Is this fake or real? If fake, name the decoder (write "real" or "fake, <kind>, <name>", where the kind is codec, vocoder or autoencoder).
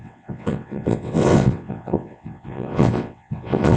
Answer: fake, vocoder, WaveNeXt